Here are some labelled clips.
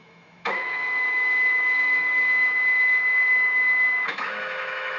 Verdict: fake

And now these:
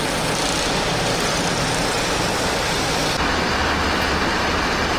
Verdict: real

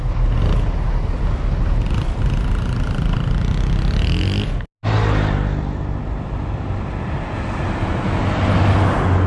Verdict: real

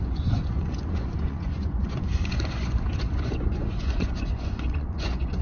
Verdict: fake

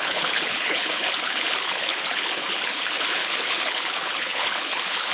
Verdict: fake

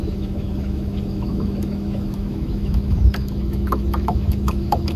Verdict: fake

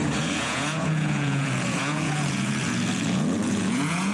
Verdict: fake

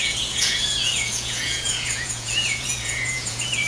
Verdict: fake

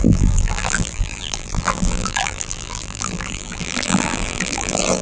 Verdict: fake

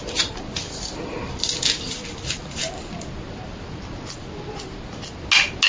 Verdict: real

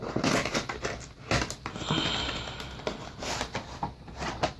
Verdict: real